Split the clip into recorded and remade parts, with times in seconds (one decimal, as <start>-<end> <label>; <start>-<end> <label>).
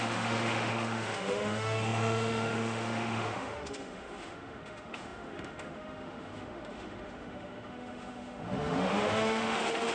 0.0-9.9 remade